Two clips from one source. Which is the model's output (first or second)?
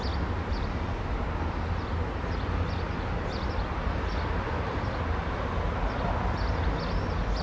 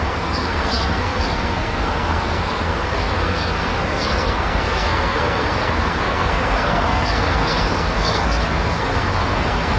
second